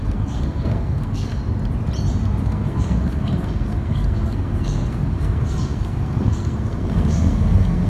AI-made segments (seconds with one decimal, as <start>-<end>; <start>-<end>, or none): 0.0-1.4; 2.4-7.9